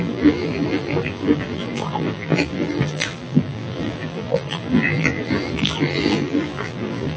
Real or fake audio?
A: fake